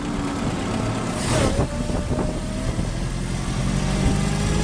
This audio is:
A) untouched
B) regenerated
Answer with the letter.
A